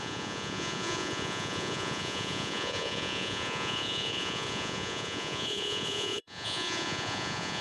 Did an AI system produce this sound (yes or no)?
yes